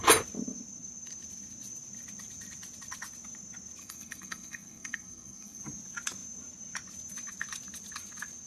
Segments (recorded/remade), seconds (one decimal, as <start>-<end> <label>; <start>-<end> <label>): 0.0-3.8 recorded; 3.8-5.6 remade; 5.6-8.5 recorded